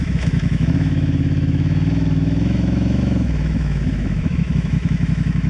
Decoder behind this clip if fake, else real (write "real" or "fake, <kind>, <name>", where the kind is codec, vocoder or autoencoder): fake, autoencoder, DAC-VAE